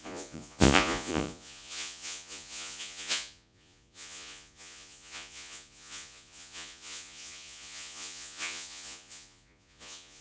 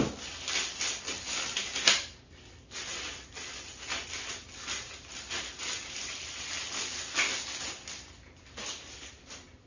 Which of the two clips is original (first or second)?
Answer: second